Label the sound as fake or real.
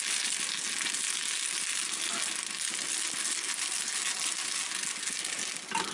real